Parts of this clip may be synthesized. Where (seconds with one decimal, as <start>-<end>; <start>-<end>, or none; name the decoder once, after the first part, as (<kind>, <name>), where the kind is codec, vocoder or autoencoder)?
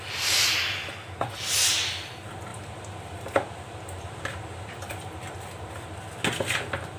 2.5-4.9 (vocoder, BigVGAN v2)